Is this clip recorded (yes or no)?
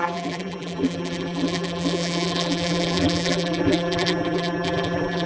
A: no